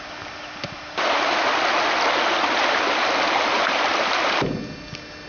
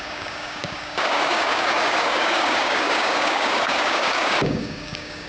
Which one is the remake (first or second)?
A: second